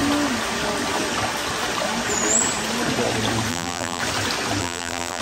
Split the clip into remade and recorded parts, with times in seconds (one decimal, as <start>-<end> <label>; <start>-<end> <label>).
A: 0.0-3.5 recorded; 3.5-4.0 remade; 4.0-4.6 recorded; 4.6-5.2 remade